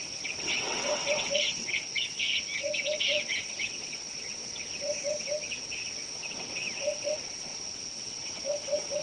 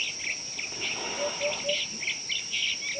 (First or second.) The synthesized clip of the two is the first